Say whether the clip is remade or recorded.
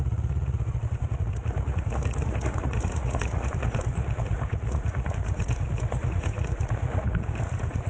remade